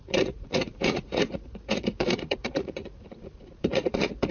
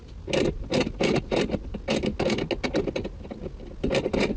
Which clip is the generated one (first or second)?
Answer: first